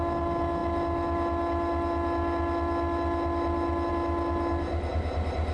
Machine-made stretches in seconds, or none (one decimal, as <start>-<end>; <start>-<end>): none